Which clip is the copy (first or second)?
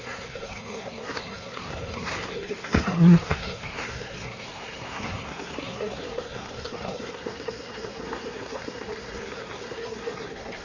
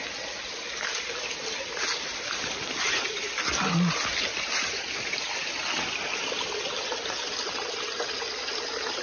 first